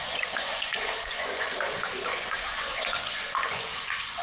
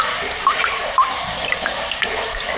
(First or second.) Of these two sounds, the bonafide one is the second